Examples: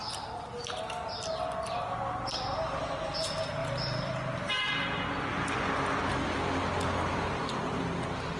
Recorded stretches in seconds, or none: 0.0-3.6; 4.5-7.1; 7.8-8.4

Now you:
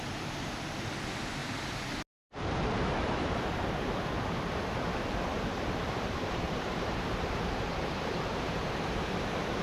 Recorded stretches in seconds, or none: 0.0-5.3; 8.6-9.6

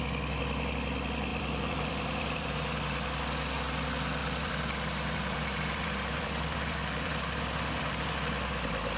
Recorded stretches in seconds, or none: 0.0-1.3; 2.5-4.2; 8.0-9.0

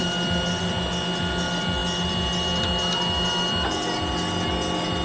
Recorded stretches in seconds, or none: 0.0-5.0

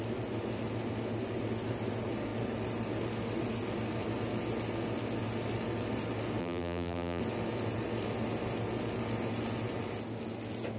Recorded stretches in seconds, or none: 0.0-6.4; 7.2-10.8